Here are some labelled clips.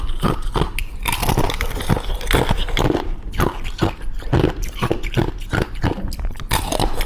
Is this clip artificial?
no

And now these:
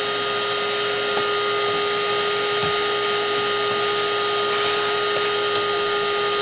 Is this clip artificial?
no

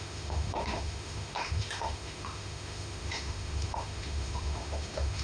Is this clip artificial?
yes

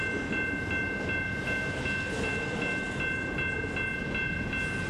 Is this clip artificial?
no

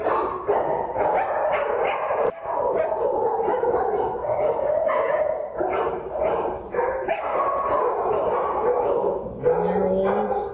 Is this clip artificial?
no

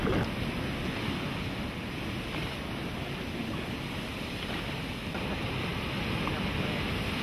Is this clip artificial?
no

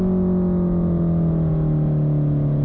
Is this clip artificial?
no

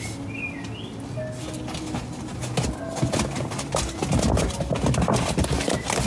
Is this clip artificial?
no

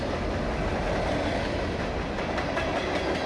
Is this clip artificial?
no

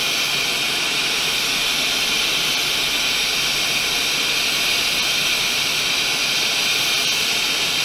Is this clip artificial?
no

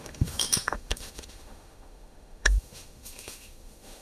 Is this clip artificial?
yes